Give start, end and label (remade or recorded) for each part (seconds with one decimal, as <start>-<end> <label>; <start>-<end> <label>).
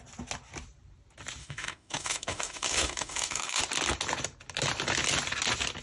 0.0-1.4 recorded; 1.4-3.6 remade; 3.6-5.8 recorded